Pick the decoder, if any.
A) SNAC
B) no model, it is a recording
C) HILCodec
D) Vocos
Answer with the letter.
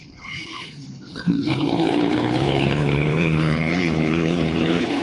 C